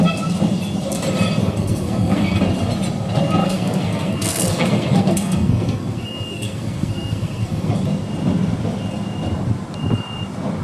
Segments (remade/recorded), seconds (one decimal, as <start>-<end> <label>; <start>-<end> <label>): 0.0-1.4 recorded; 1.4-2.4 remade; 2.4-3.4 recorded; 3.4-7.7 remade; 7.7-10.6 recorded